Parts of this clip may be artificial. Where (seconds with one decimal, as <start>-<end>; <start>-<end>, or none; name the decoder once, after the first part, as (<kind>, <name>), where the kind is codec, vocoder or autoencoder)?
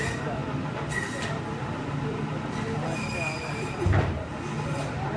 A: 0.0-0.4 (vocoder, BigVGAN v2); 3.5-4.3